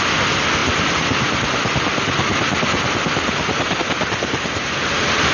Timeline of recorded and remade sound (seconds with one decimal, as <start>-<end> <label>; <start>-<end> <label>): 0.0-5.3 recorded